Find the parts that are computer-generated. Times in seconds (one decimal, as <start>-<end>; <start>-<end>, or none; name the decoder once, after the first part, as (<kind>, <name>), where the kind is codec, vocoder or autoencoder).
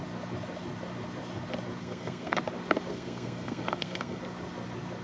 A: 1.8-2.4 (codec, SNAC); 2.9-4.2